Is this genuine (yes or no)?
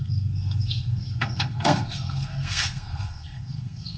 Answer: no